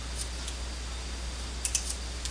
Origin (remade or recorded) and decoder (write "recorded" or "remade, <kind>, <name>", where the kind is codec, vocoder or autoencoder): recorded